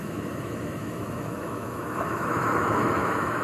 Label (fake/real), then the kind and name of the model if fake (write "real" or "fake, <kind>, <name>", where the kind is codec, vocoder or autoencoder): fake, autoencoder, DAC-VAE